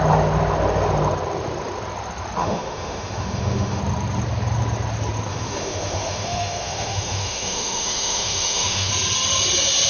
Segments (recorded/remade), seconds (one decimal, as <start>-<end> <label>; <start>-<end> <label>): 0.0-2.4 recorded; 2.4-3.8 remade; 3.8-5.3 recorded; 5.3-8.9 remade; 8.9-9.9 recorded